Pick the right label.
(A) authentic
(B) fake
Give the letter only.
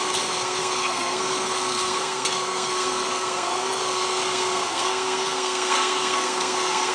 B